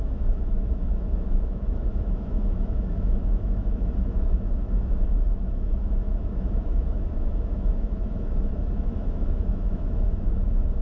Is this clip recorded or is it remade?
remade